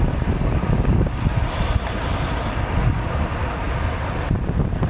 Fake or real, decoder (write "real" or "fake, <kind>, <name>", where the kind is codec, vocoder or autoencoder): real